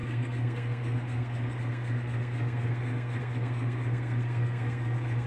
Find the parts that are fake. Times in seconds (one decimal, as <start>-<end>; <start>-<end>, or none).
0.0-5.3